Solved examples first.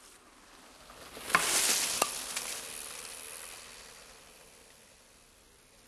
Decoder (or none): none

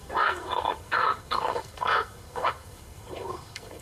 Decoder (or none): codec, SNAC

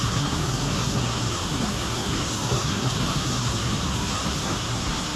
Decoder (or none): codec, SNAC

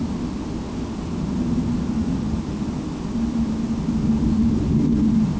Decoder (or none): none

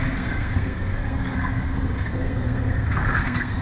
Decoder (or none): codec, SNAC